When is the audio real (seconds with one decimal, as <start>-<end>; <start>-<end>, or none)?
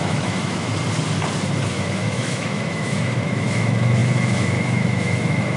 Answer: 0.7-1.6